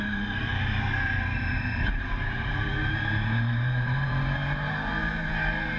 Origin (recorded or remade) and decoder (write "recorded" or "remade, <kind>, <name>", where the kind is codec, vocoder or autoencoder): remade, vocoder, BigVGAN v2